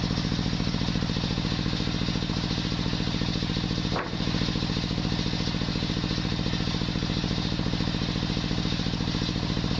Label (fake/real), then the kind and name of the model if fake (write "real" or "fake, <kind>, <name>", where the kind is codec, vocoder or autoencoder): real